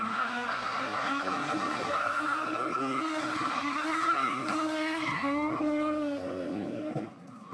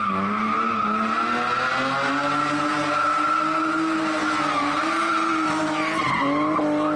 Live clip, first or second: second